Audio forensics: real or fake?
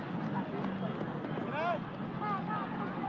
real